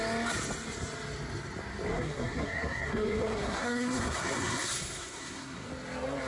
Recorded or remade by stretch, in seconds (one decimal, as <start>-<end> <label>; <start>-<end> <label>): 0.0-1.9 recorded; 1.9-5.7 remade; 5.7-6.3 recorded